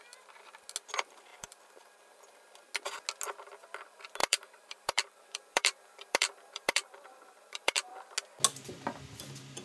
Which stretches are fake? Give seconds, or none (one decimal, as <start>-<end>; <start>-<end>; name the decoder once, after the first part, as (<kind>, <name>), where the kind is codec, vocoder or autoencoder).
1.3-2.0 (vocoder, BigVGAN v2); 4.2-7.9